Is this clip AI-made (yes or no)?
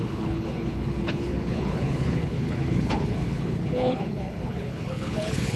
yes